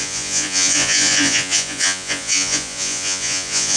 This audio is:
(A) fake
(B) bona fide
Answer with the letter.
A